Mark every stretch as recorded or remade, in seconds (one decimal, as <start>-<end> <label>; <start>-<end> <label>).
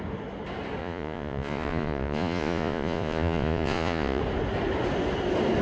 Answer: 0.0-0.8 recorded; 0.8-4.2 remade; 4.2-5.6 recorded